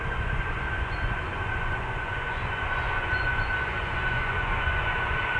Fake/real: fake